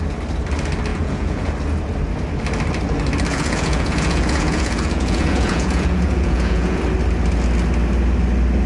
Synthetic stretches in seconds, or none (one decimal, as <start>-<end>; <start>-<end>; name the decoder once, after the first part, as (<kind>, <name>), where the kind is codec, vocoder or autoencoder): 0.9-1.5 (vocoder, Vocos); 3.3-6.8